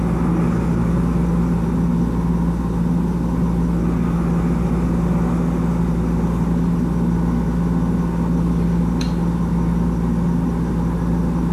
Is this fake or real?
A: real